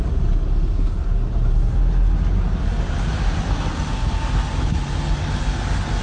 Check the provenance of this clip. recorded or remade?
recorded